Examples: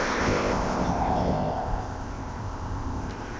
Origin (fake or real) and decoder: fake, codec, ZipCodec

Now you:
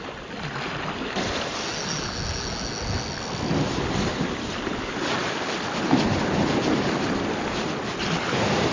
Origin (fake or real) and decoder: real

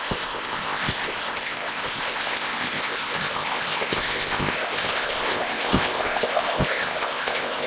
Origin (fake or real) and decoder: fake, codec, ZipCodec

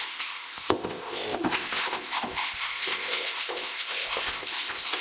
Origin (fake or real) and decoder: fake, codec, ZipCodec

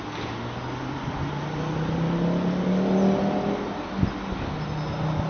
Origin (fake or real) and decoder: real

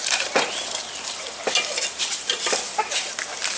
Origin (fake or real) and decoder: real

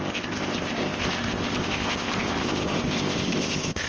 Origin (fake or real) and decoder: fake, codec, ZipCodec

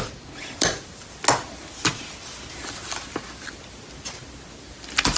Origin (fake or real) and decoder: real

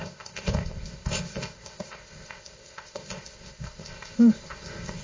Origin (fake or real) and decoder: fake, codec, ZipCodec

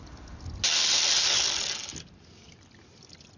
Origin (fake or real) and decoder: real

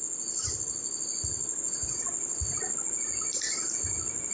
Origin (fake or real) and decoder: real